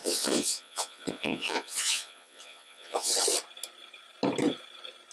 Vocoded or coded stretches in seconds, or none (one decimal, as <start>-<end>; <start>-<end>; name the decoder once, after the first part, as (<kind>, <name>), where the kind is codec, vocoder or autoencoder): 0.0-3.1 (vocoder, Vocos)